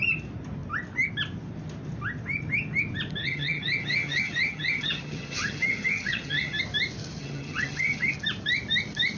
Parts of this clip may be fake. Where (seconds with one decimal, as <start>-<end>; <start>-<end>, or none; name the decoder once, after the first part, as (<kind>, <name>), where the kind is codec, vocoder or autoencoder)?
3.2-6.6 (vocoder, HiFi-GAN); 7.2-8.1